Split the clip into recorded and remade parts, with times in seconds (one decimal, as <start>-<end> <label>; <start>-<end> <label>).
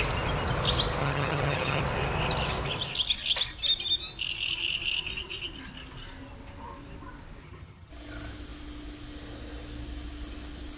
0.0-1.0 recorded; 1.0-1.8 remade; 1.8-7.4 recorded; 7.4-7.9 remade; 7.9-10.8 recorded